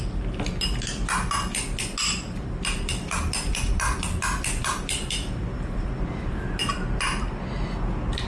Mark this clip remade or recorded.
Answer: recorded